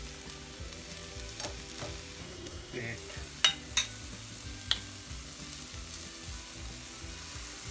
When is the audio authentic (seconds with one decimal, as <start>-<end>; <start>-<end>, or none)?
0.0-2.2; 2.8-7.7